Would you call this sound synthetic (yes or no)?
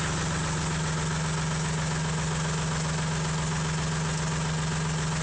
no